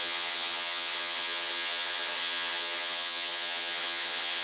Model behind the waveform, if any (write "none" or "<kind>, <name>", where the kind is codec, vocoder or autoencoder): vocoder, HiFi-GAN